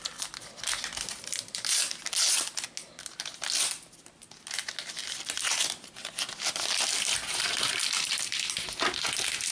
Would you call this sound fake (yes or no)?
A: no